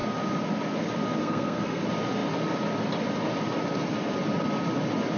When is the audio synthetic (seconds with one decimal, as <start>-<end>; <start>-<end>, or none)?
1.2-1.8